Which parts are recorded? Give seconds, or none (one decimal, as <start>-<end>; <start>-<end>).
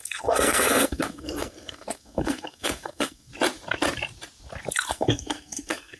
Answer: 3.3-4.9